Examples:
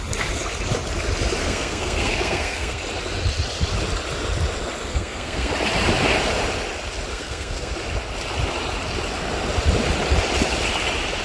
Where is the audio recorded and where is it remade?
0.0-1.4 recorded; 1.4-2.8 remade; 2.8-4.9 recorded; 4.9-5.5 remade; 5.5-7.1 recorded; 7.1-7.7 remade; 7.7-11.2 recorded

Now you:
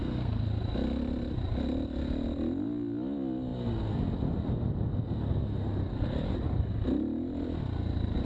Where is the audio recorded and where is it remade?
0.0-0.5 remade; 0.5-8.2 recorded

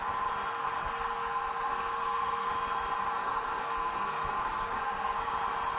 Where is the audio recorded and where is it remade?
0.0-0.5 recorded; 0.5-2.5 remade; 2.5-3.2 recorded; 3.2-5.3 remade; 5.3-5.8 recorded

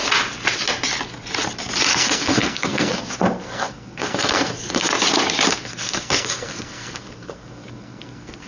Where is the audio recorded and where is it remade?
0.0-1.9 recorded; 1.9-4.9 remade; 4.9-5.5 recorded; 5.5-8.5 remade

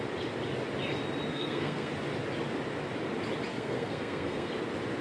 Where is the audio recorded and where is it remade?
0.0-1.3 recorded; 1.3-1.9 remade; 1.9-3.5 recorded; 3.5-4.5 remade; 4.5-5.0 recorded

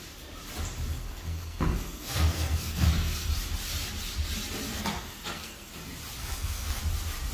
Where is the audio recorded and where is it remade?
0.0-0.9 recorded; 0.9-3.3 remade; 3.3-4.7 recorded; 4.7-5.7 remade; 5.7-6.2 recorded; 6.2-6.8 remade; 6.8-7.3 recorded

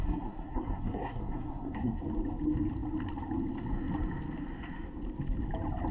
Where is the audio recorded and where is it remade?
0.0-2.0 remade; 2.0-5.9 recorded